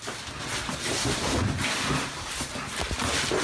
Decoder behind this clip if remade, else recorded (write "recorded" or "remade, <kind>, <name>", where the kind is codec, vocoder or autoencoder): recorded